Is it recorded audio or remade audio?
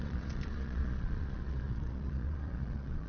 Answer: remade